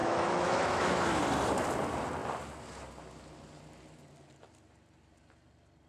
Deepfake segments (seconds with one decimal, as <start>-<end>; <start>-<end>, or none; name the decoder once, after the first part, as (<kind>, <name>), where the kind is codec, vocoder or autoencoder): 0.0-1.2 (autoencoder, DAC-VAE)